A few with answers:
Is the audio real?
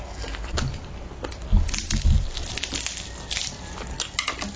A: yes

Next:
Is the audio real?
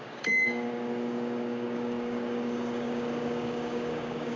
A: no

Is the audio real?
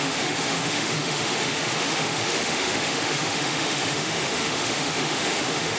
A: no